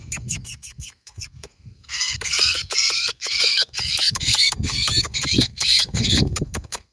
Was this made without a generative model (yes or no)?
no